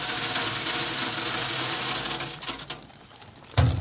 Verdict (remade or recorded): recorded